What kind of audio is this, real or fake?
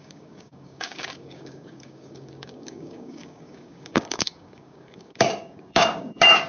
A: fake